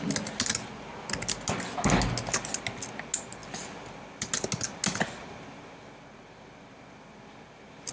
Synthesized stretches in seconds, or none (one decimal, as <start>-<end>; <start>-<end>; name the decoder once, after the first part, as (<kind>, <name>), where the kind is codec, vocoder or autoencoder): none